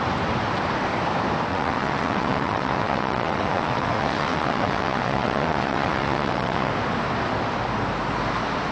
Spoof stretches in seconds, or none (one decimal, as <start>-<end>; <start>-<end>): 1.5-6.7